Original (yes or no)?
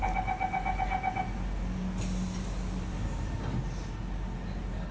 yes